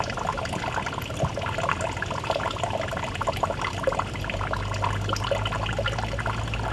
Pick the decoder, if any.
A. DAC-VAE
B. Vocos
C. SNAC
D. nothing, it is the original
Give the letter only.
D